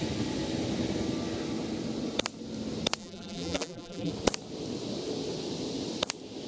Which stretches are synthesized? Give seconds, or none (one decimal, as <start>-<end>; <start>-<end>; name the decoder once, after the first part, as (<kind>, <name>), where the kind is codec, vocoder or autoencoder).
3.0-4.1 (vocoder, BigVGAN v2)

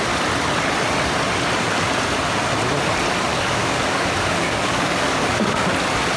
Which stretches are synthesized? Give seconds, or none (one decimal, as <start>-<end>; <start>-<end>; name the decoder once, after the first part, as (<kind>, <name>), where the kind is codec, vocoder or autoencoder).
3.3-5.7 (codec, DAC)

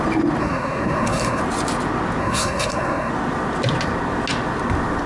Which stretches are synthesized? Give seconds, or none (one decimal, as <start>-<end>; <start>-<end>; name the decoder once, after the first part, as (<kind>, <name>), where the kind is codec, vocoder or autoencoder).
0.4-1.4 (codec, SNAC); 2.2-3.1

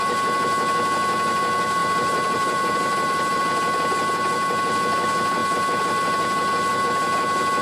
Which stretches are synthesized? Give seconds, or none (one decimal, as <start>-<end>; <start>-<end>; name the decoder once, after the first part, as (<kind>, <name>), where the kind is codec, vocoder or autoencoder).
1.8-3.4 (vocoder, BigVGAN v2)

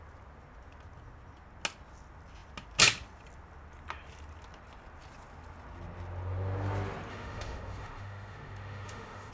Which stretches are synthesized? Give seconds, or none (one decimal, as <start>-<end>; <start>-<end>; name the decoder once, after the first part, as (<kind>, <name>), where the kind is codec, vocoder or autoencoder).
7.1-9.3 (autoencoder, DAC-VAE)

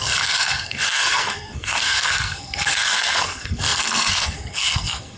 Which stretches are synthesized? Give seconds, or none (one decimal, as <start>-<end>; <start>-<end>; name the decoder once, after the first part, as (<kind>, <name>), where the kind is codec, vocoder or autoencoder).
0.0-5.2 (codec, SNAC)